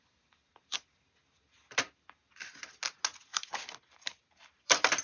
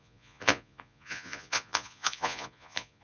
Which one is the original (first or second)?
first